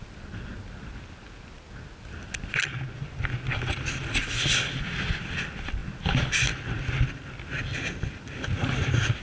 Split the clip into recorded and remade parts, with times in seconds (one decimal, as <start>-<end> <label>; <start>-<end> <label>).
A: 0.0-9.2 recorded